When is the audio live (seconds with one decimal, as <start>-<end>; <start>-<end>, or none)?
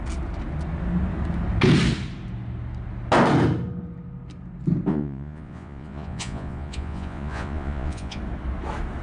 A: 0.0-4.9; 8.2-9.0